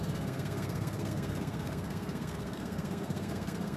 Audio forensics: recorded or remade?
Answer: remade